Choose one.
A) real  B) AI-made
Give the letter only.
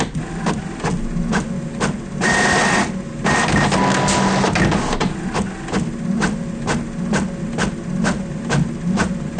A